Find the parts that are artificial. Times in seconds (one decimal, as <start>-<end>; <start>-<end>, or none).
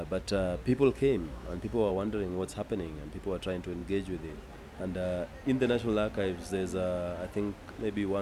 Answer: 0.7-1.9